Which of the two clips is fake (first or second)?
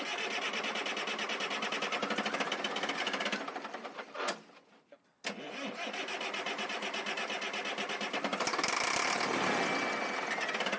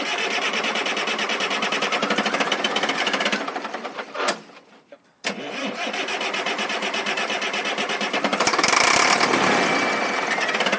second